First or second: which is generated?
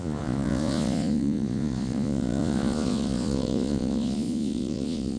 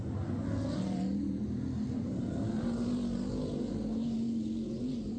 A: first